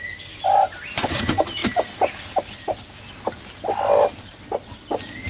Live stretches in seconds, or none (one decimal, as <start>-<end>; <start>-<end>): 0.0-5.3